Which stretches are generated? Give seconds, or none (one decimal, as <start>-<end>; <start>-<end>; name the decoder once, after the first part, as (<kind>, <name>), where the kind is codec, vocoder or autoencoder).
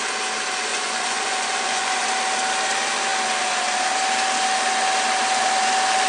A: 0.7-2.1 (vocoder, Vocos)